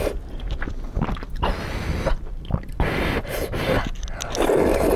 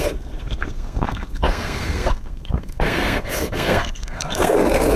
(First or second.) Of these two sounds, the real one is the first